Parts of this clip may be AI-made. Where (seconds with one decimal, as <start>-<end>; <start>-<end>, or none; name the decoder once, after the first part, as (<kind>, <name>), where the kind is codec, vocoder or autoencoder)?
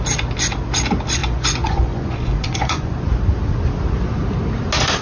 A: 1.2-3.0 (vocoder, Vocos)